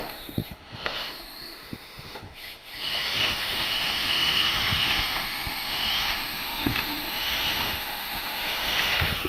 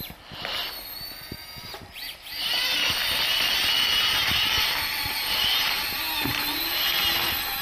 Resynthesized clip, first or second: first